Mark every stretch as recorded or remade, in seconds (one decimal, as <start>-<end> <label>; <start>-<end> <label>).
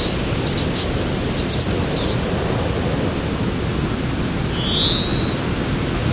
0.0-6.1 recorded